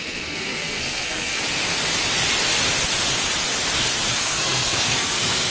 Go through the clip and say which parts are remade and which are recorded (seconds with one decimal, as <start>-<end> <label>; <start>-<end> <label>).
0.0-1.4 remade; 1.4-4.1 recorded; 4.1-5.5 remade